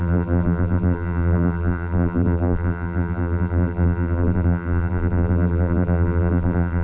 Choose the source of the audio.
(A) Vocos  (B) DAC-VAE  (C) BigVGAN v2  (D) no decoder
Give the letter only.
C